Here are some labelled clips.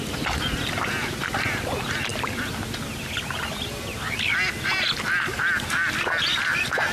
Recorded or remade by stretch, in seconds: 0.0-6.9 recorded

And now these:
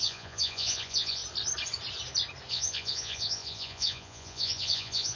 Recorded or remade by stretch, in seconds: 0.0-1.2 remade; 1.2-2.5 recorded; 2.5-5.2 remade

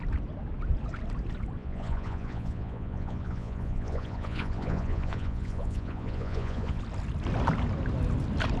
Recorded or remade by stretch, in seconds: 0.0-1.6 recorded; 1.6-6.8 remade; 6.8-8.6 recorded